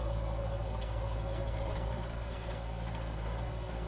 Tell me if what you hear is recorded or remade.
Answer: remade